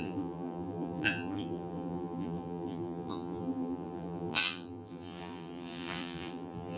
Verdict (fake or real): fake